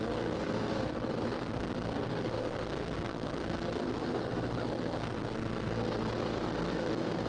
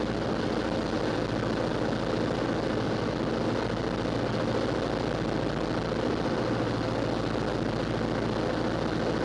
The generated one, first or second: first